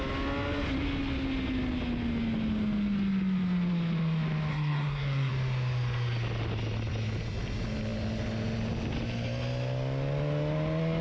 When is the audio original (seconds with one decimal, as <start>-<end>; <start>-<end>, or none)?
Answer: 0.0-4.5; 5.3-11.0